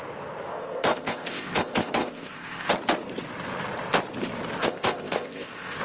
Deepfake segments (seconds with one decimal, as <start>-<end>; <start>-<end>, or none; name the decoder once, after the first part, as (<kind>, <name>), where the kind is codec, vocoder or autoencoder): 0.5-2.7 (codec, ZipCodec); 4.6-5.8